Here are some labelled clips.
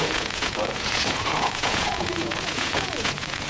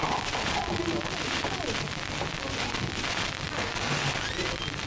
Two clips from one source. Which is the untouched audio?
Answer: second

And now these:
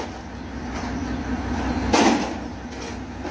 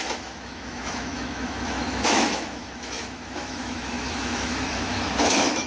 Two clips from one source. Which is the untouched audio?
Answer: first